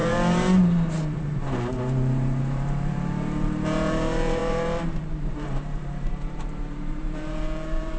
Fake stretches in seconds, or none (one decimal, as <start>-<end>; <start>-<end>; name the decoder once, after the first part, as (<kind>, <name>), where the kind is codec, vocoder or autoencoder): 0.0-8.0 (vocoder, BigVGAN v2)